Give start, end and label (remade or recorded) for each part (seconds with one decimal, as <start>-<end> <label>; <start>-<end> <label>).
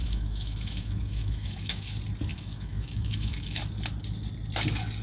0.0-1.9 remade; 1.9-2.3 recorded; 2.3-3.6 remade; 3.6-5.0 recorded